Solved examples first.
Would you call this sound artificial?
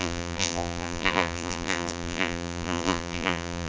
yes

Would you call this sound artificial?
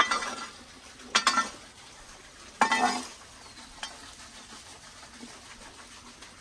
no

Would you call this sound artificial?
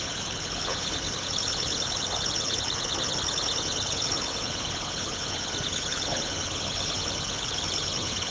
yes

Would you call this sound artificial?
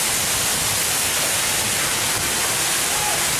no